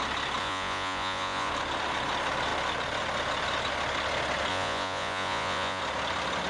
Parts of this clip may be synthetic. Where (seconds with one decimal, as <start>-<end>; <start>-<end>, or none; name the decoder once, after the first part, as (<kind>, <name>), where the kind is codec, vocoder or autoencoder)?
0.4-1.5 (vocoder, Vocos); 4.5-5.8